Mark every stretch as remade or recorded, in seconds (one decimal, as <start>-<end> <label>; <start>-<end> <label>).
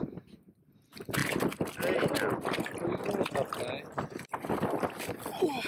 0.0-5.7 recorded